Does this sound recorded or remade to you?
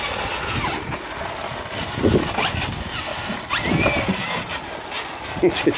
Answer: recorded